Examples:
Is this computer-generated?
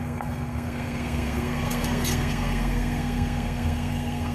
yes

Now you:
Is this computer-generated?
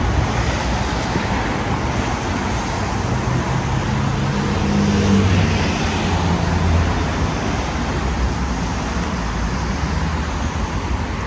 no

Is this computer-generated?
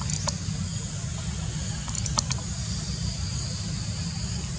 no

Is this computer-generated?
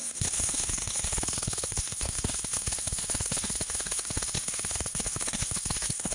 yes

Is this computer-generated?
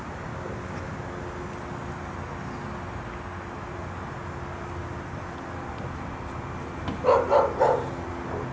no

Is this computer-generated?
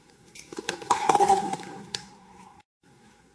yes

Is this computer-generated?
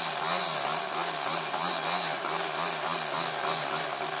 no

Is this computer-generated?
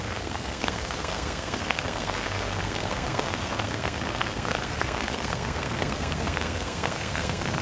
yes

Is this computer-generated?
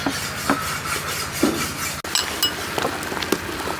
no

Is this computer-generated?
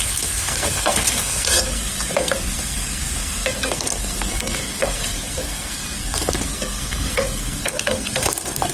yes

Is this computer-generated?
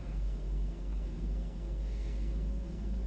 yes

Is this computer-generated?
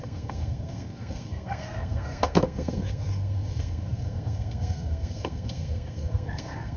yes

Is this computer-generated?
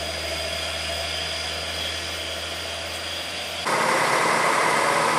no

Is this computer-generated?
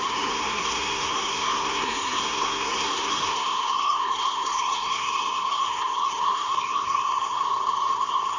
yes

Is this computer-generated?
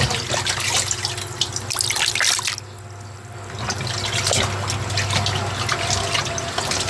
no